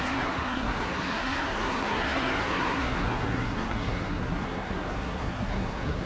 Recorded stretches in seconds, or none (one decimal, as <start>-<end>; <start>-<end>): none